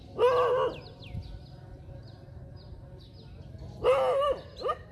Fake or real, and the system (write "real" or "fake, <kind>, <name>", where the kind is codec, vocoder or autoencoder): real